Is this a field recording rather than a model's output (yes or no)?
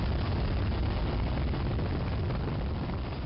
yes